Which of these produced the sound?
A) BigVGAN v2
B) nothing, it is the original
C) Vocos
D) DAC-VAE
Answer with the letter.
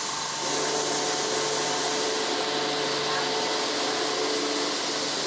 B